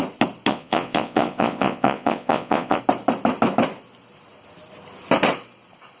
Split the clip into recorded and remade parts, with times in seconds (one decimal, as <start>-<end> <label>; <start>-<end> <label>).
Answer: 0.0-0.5 recorded; 0.5-2.8 remade; 2.8-6.0 recorded